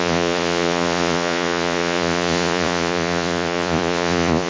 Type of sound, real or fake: fake